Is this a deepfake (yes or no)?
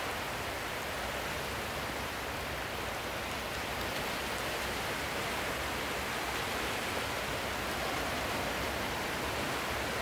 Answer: no